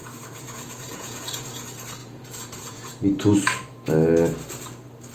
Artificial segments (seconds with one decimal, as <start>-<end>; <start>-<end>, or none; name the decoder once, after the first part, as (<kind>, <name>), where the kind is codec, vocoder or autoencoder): 0.0-1.2 (vocoder, Vocos); 2.0-2.9